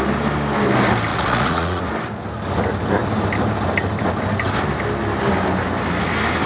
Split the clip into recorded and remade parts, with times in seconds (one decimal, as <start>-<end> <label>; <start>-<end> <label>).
0.0-1.1 recorded; 1.1-1.8 remade; 1.8-6.5 recorded